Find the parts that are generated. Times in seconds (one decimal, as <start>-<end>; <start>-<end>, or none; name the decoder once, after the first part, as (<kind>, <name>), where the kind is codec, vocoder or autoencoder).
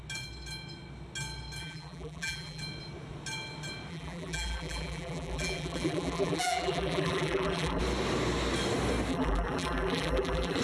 1.6-2.6 (vocoder, BigVGAN v2); 3.9-7.8; 9.1-10.6